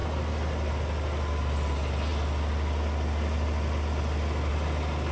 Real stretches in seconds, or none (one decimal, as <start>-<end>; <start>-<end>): 0.0-5.1